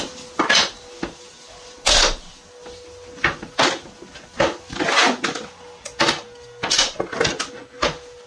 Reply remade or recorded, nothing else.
recorded